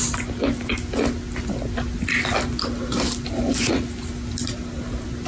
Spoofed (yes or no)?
no